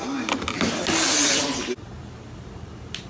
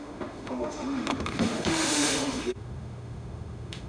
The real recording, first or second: first